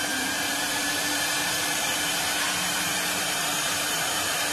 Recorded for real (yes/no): no